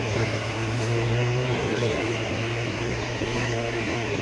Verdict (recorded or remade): remade